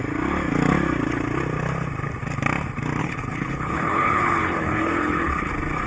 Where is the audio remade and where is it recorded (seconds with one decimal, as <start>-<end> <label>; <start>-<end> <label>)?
0.0-3.0 recorded; 3.0-5.5 remade; 5.5-5.9 recorded